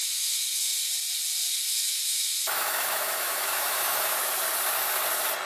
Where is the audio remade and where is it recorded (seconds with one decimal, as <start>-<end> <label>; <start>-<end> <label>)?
0.0-0.9 remade; 0.9-1.5 recorded; 1.5-4.3 remade; 4.3-5.5 recorded